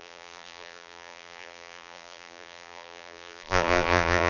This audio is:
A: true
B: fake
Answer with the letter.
B